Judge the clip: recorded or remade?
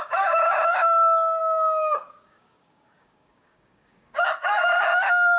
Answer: remade